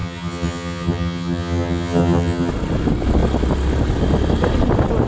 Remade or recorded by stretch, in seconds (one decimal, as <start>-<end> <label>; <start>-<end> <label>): 0.0-2.5 remade; 2.5-5.1 recorded